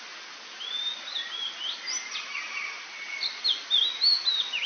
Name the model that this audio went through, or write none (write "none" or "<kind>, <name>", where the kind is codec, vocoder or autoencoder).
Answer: none